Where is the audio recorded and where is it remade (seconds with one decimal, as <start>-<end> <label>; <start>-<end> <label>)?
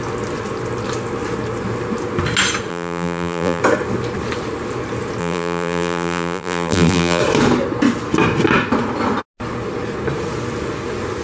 0.0-2.7 recorded; 2.7-3.6 remade; 3.6-5.2 recorded; 5.2-7.2 remade; 7.2-11.2 recorded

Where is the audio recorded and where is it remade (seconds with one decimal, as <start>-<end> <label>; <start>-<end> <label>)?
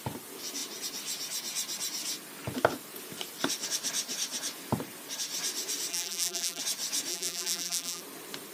0.0-5.9 recorded; 5.9-6.6 remade; 6.6-7.1 recorded; 7.1-8.0 remade; 8.0-8.5 recorded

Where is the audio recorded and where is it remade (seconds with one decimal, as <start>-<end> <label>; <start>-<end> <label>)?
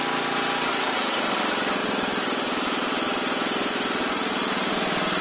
0.0-0.7 recorded; 0.7-1.4 remade; 1.4-1.8 recorded; 1.8-4.0 remade; 4.0-5.2 recorded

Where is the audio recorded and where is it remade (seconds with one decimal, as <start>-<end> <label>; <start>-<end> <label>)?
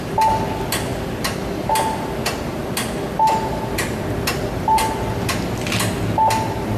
0.0-6.8 recorded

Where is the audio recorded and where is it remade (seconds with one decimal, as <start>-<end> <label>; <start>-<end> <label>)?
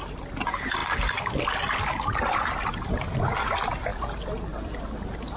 0.0-5.4 recorded